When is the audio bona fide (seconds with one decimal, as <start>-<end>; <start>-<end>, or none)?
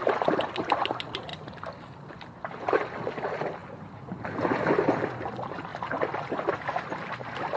0.0-7.6